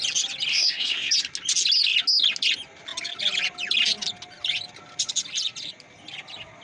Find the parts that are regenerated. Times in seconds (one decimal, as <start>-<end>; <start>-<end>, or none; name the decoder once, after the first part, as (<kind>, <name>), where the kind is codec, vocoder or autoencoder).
0.5-1.1 (codec, SNAC)